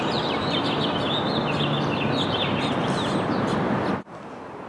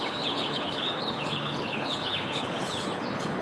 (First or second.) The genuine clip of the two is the first